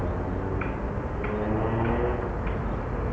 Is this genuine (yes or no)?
yes